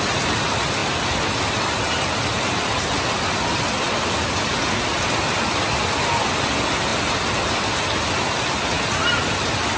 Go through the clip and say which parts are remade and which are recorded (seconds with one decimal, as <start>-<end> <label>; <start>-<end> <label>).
0.0-9.8 recorded